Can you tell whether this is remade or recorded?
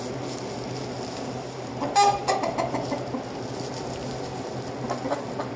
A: recorded